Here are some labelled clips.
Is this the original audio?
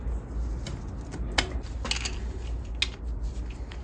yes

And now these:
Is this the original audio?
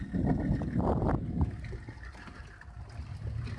yes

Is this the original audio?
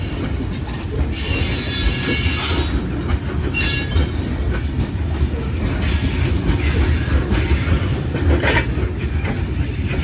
yes